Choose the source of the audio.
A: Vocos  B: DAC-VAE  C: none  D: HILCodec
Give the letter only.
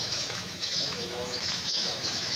B